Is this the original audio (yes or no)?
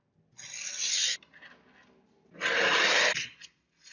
yes